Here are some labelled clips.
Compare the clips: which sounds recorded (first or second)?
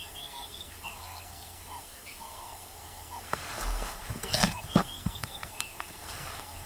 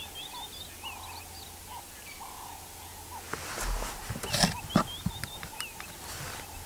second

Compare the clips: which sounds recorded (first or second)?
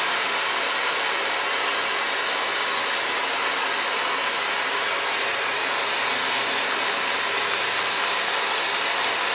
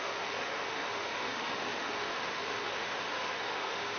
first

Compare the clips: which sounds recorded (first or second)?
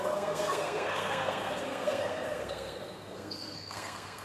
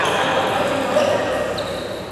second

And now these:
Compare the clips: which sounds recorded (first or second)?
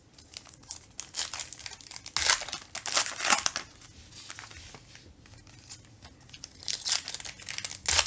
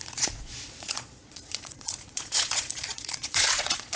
first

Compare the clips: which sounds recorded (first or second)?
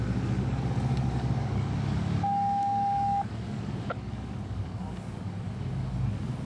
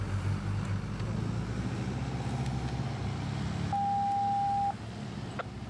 second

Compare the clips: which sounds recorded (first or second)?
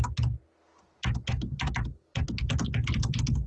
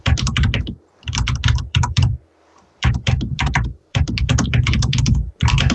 first